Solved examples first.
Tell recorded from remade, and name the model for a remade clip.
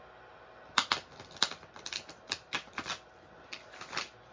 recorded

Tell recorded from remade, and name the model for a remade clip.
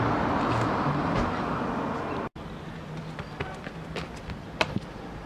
recorded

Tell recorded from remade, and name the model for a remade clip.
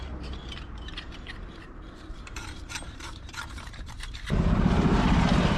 remade, vocoder, BigVGAN v2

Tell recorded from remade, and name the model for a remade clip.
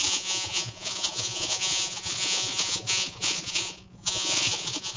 remade, vocoder, Vocos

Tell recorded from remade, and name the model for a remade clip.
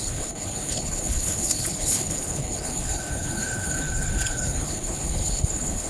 remade, codec, HILCodec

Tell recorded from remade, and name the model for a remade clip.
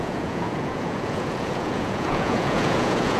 remade, vocoder, Vocos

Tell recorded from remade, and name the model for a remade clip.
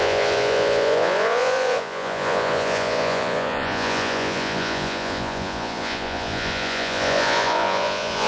remade, vocoder, Vocos